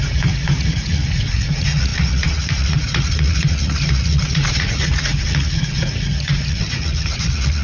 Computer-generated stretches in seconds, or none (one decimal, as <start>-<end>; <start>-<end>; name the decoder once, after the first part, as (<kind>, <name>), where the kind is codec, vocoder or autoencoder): 0.0-7.6 (vocoder, Vocos)